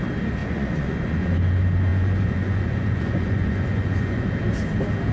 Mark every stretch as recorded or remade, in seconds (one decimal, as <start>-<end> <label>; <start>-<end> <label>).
0.0-0.4 recorded; 0.4-1.4 remade; 1.4-1.9 recorded; 1.9-4.3 remade; 4.3-5.1 recorded

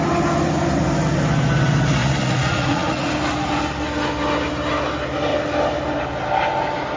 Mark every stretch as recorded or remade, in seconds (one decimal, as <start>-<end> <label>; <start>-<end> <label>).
0.0-2.0 recorded; 2.0-3.1 remade; 3.1-7.0 recorded

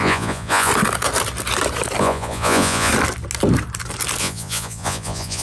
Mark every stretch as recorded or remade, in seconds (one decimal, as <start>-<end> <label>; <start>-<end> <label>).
0.0-0.7 remade; 0.7-2.0 recorded; 2.0-2.9 remade; 2.9-4.2 recorded; 4.2-5.4 remade

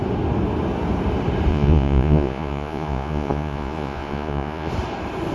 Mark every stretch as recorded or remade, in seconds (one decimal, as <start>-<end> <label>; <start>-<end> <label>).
0.0-1.5 recorded; 1.5-4.7 remade; 4.7-5.3 recorded

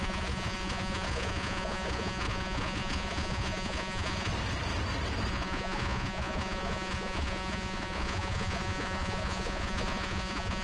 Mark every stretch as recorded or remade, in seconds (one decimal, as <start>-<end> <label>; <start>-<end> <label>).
0.0-4.3 remade; 4.3-5.3 recorded; 5.3-10.6 remade

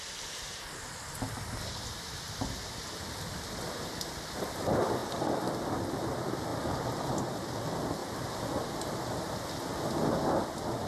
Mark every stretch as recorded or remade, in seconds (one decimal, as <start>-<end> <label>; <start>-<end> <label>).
0.0-10.9 recorded